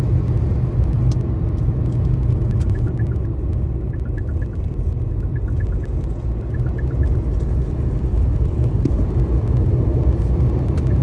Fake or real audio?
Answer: real